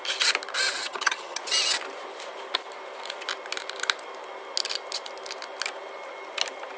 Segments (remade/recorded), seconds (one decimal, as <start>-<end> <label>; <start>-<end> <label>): 0.0-0.8 recorded; 0.8-1.4 remade; 1.4-6.8 recorded